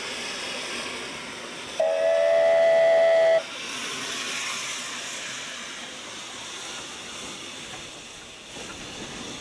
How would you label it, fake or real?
real